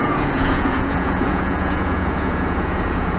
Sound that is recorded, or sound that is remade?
remade